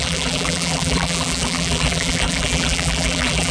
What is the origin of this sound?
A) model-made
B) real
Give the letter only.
A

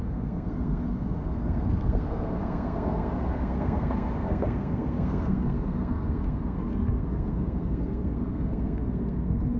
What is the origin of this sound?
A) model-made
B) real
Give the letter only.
A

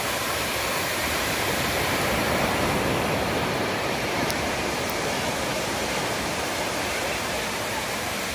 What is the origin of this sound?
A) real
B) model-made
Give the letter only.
B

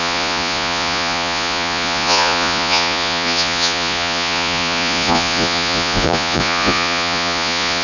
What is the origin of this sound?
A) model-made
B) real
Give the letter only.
A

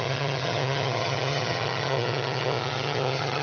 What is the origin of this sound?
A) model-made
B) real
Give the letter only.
A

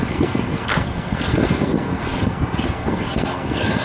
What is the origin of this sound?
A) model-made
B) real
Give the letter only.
A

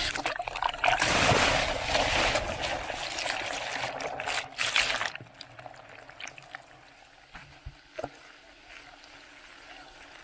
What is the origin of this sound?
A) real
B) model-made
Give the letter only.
A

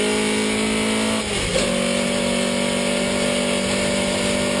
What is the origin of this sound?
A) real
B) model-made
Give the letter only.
A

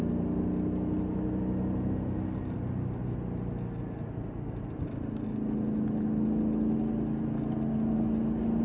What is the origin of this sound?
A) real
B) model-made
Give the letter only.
A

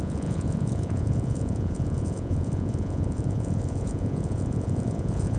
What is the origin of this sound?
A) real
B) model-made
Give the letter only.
B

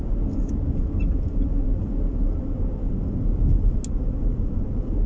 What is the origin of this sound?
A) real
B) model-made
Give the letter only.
A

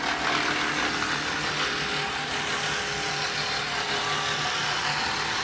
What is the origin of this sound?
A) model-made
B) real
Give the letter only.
B